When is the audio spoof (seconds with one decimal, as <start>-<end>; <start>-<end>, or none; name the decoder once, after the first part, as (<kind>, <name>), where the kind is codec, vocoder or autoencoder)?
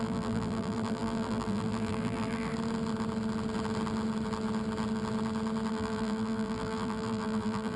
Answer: 0.0-2.5 (vocoder, BigVGAN v2); 5.7-7.8